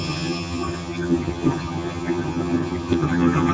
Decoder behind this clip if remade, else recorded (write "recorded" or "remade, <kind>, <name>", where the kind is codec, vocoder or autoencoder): remade, vocoder, HiFi-GAN